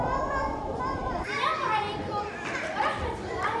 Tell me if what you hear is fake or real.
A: fake